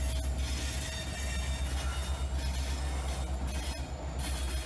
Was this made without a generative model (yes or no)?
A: yes